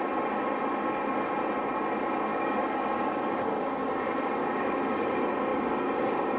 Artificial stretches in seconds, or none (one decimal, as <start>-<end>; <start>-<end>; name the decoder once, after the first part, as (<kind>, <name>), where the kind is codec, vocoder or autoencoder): 2.3-4.7 (codec, DAC); 5.5-6.4

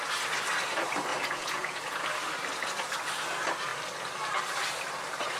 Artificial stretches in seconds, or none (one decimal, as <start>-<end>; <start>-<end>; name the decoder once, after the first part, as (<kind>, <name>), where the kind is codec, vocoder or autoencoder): 1.1-2.0 (vocoder, Vocos)

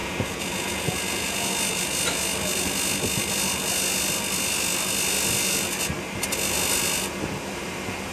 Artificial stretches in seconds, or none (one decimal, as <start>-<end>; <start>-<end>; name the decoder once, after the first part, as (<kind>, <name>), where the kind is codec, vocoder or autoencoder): 0.0-1.5 (vocoder, Vocos)

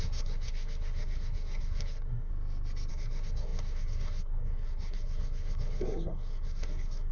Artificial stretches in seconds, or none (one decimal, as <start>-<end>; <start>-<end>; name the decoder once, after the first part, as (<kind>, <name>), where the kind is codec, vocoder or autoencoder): 0.0-2.3 (codec, SNAC); 2.9-7.1

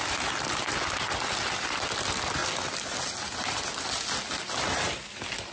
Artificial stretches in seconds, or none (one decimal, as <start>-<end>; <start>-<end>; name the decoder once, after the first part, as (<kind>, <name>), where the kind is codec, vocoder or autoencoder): none

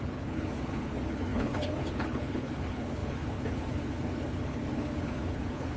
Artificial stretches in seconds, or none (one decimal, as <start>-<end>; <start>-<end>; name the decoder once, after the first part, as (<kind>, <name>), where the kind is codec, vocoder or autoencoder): 0.0-5.8 (codec, HILCodec)

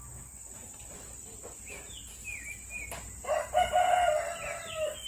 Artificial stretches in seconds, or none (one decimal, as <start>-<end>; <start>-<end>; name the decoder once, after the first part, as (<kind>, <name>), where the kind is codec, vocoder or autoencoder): none

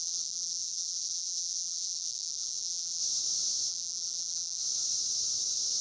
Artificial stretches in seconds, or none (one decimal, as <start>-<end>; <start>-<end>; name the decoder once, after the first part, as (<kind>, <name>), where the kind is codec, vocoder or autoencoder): 0.0-3.0 (vocoder, BigVGAN v2); 3.7-4.6